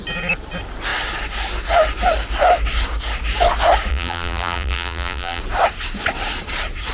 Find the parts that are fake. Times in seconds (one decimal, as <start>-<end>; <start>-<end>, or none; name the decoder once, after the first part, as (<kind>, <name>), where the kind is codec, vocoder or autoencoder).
3.9-5.4 (vocoder, BigVGAN v2)